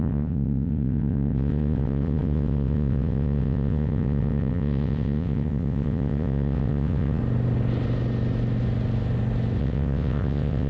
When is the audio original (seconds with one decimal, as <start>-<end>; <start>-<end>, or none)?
7.2-9.6